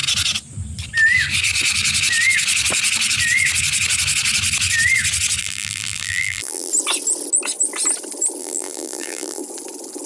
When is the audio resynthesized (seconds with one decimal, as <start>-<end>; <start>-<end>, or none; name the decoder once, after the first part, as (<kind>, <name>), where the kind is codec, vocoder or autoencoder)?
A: 5.4-6.7 (vocoder, BigVGAN v2); 8.4-9.4